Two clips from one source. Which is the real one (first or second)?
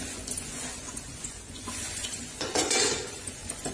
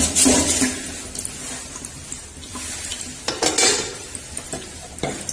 second